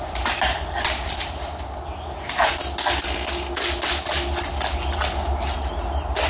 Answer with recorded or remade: recorded